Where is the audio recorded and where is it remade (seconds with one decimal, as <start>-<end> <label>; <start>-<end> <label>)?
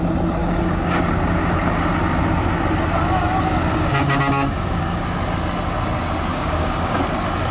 0.0-0.4 recorded; 0.4-1.0 remade; 1.0-3.7 recorded; 3.7-5.0 remade; 5.0-6.3 recorded; 6.3-7.0 remade; 7.0-7.5 recorded